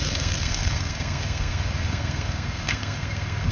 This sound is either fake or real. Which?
fake